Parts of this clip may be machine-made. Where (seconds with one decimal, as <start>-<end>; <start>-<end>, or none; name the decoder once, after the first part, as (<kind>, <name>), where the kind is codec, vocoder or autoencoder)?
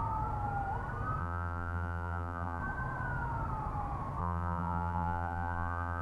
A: 1.2-2.6 (vocoder, BigVGAN v2); 4.2-6.0